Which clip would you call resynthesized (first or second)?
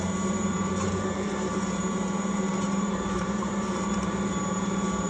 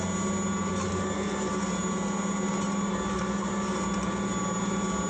first